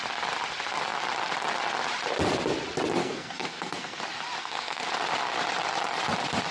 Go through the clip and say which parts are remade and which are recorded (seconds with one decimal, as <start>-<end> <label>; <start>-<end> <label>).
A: 0.0-3.0 recorded; 3.0-4.0 remade; 4.0-4.4 recorded; 4.4-4.9 remade; 4.9-6.5 recorded